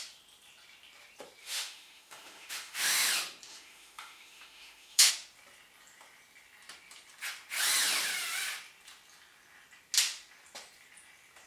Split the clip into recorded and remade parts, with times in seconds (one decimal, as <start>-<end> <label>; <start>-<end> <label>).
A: 0.0-1.4 recorded; 1.4-3.1 remade; 3.1-3.5 recorded; 3.5-5.1 remade; 5.1-11.5 recorded

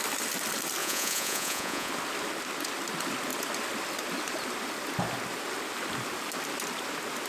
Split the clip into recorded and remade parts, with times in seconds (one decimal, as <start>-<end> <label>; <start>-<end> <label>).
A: 0.0-0.8 recorded; 0.8-1.9 remade; 1.9-7.3 recorded